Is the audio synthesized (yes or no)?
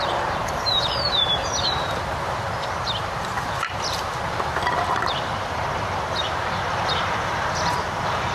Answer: yes